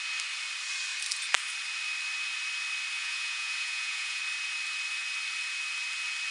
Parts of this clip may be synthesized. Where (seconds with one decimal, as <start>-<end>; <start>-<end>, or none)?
3.0-4.2